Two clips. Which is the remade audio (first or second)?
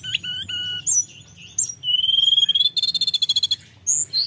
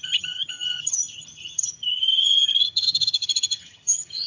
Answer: second